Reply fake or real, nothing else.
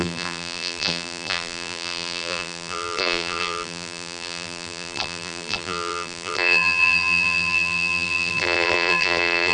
fake